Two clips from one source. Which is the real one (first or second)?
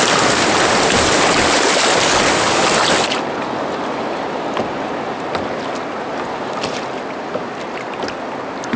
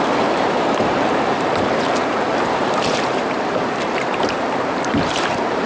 first